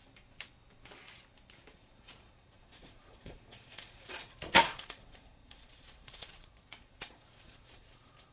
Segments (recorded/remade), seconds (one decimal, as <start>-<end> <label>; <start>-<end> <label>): 0.0-1.7 recorded; 1.7-8.3 remade